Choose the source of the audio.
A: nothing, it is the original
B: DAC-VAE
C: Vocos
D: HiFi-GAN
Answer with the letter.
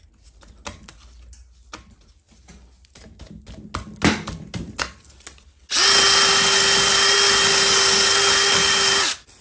A